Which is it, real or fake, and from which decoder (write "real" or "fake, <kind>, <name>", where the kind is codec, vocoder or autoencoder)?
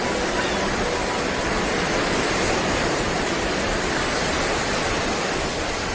real